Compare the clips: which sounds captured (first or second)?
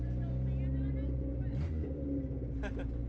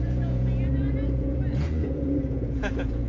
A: first